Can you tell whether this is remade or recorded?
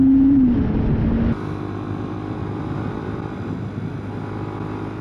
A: recorded